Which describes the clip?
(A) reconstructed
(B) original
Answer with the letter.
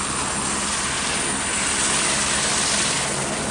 B